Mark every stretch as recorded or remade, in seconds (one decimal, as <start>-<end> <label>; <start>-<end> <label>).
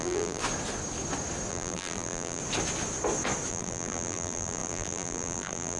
0.0-0.4 remade; 0.4-1.5 recorded; 1.5-2.4 remade; 2.4-3.5 recorded; 3.5-5.8 remade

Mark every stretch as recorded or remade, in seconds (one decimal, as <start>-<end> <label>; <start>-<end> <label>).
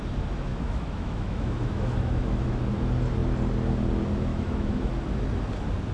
0.0-0.5 recorded; 0.5-2.6 remade; 2.6-4.3 recorded; 4.3-4.9 remade; 4.9-5.9 recorded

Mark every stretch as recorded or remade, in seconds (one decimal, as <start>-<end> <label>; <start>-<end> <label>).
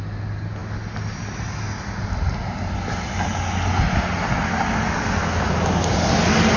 0.0-6.6 recorded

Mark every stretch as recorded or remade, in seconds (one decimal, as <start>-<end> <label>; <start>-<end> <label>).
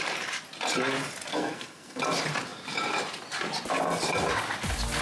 0.0-1.3 recorded; 1.3-2.0 remade; 2.0-5.0 recorded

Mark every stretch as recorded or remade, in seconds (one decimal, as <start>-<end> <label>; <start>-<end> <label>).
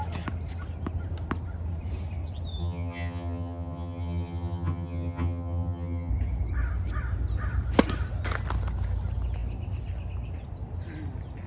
0.0-2.6 recorded; 2.6-6.1 remade; 6.1-11.5 recorded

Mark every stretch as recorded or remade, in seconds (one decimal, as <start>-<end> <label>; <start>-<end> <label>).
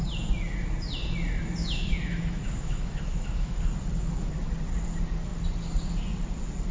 0.0-1.6 recorded; 1.6-3.6 remade; 3.6-6.7 recorded